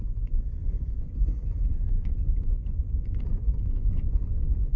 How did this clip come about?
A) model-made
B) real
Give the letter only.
A